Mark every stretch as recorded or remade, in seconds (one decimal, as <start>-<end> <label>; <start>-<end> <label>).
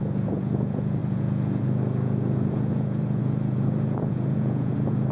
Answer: 0.0-5.1 remade